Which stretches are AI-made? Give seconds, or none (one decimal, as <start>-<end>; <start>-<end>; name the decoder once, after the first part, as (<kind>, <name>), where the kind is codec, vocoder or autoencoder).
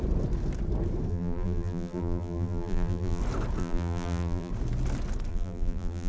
1.1-3.2 (vocoder, BigVGAN v2); 3.6-4.5; 5.3-6.1